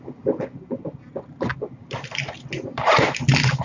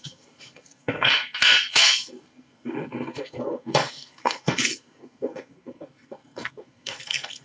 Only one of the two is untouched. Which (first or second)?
first